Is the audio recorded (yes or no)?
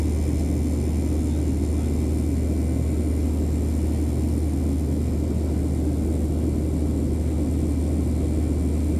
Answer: yes